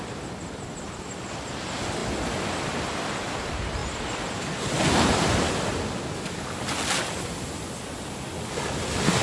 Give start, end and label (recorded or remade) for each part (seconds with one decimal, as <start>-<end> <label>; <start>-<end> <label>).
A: 0.0-9.2 recorded